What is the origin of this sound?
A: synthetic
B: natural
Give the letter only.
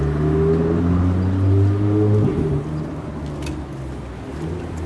B